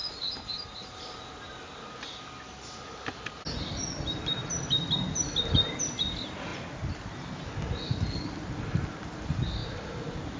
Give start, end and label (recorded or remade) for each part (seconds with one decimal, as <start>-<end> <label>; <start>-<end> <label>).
0.0-1.9 remade; 1.9-10.4 recorded